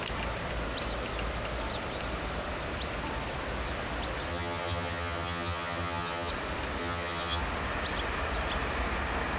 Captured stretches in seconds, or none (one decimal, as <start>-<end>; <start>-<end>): 0.0-4.3; 6.3-6.8; 7.4-9.4

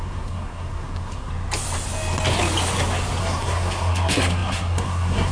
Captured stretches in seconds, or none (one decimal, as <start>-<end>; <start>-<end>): 1.3-3.2